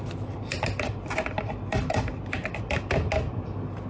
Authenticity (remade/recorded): recorded